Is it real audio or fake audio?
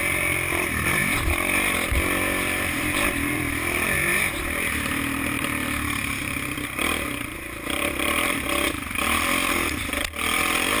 fake